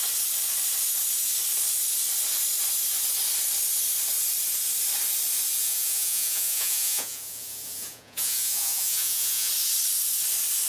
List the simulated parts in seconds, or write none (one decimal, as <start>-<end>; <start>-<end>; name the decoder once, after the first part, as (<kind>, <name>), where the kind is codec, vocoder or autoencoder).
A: 5.6-9.5 (vocoder, Vocos)